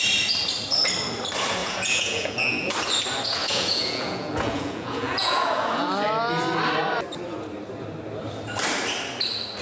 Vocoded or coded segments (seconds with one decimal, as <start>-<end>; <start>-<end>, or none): 1.6-2.7; 3.4-5.9